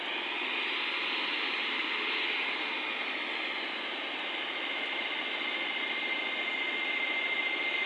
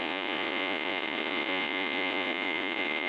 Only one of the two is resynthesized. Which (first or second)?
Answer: second